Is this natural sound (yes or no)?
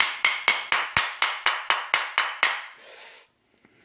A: yes